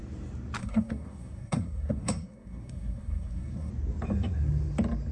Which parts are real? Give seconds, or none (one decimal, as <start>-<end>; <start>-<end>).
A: 0.0-0.6; 3.7-5.1